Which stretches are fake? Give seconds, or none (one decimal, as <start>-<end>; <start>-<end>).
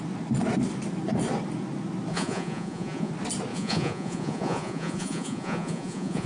2.1-3.1; 3.5-6.3